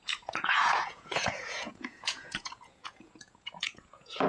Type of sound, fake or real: fake